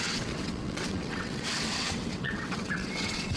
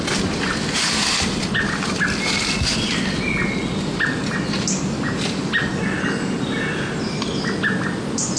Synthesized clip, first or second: first